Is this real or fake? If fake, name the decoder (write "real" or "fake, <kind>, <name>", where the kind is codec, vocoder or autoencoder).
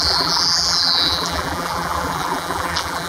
fake, vocoder, BigVGAN v2